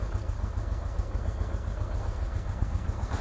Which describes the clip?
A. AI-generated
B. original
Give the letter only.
A